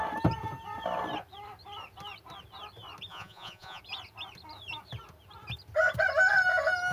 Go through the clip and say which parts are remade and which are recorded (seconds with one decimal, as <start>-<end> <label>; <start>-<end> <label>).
0.0-3.1 recorded; 3.1-3.8 remade; 3.8-6.9 recorded